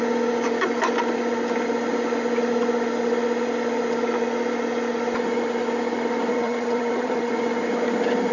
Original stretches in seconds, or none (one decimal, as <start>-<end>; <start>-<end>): 0.0-6.3; 7.3-8.3